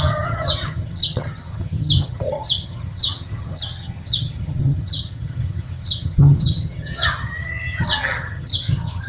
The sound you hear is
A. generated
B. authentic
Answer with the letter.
A